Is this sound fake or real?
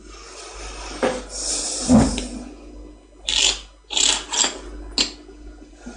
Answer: real